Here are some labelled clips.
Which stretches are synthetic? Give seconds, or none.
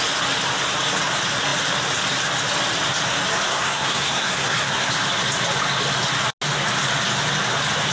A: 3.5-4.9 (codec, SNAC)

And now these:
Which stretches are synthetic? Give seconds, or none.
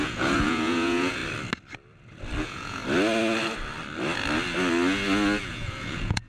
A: 0.0-1.2 (vocoder, Vocos); 2.4-2.8; 5.5-6.3